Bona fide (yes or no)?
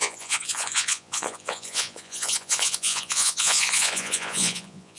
no